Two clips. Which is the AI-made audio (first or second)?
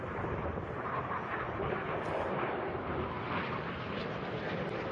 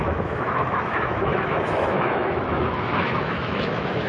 second